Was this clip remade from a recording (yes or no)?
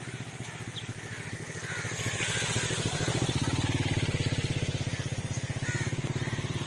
no